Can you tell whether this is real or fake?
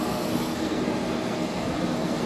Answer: fake